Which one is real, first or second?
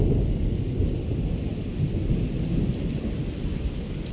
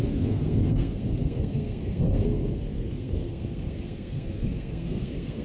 first